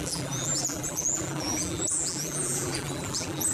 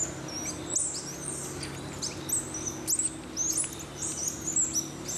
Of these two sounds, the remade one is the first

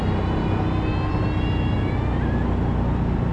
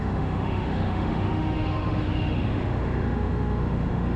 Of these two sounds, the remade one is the second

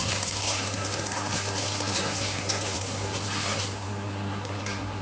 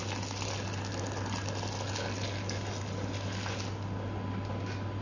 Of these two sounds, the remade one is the first